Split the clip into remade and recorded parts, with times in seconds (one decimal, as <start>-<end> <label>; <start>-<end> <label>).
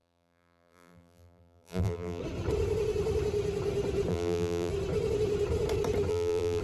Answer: 0.0-2.2 remade; 2.2-4.1 recorded; 4.1-4.7 remade; 4.7-6.1 recorded; 6.1-6.6 remade